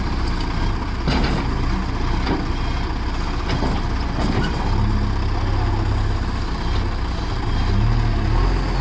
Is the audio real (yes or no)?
yes